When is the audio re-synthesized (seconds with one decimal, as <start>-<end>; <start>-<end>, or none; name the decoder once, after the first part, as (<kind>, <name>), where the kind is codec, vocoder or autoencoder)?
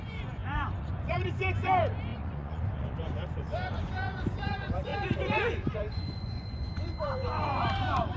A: 0.0-8.2 (vocoder, Vocos)